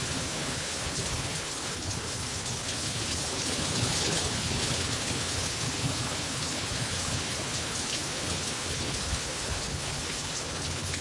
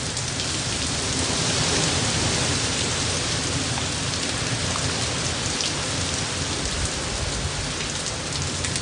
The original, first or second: second